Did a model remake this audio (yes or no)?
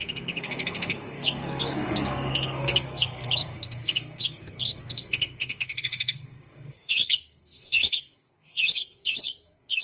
yes